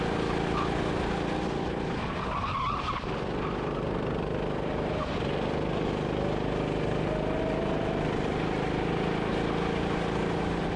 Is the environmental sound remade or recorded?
recorded